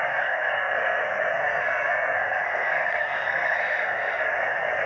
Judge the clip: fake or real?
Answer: fake